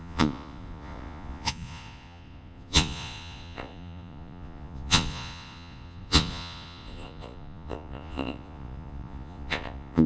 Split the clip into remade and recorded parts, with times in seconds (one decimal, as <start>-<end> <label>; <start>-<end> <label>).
0.0-10.1 remade